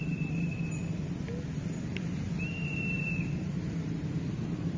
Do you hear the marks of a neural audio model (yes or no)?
no